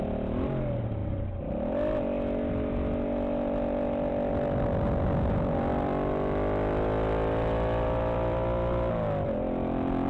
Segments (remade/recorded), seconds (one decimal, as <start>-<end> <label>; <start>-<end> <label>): 0.0-5.7 recorded; 5.7-8.9 remade; 8.9-10.1 recorded